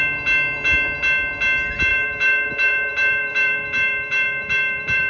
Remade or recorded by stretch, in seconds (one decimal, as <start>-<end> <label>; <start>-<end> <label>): 0.0-1.9 recorded; 1.9-5.1 remade